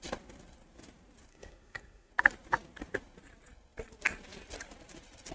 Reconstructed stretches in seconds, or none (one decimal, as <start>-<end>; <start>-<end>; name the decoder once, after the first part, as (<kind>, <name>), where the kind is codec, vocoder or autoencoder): 1.3-2.1 (codec, SNAC)